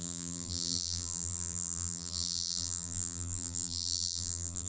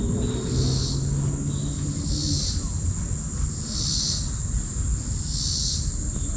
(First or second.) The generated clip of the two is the first